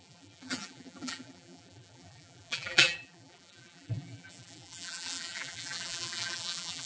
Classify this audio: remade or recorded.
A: remade